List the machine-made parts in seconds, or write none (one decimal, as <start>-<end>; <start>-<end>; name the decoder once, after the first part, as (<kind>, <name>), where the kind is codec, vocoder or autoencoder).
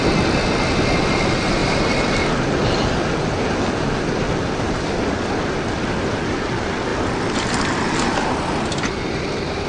none